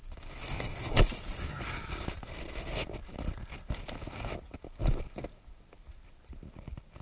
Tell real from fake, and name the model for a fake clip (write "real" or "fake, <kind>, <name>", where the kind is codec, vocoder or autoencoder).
real